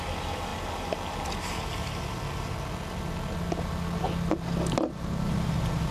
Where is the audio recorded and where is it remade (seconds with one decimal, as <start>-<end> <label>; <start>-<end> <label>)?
0.0-5.9 recorded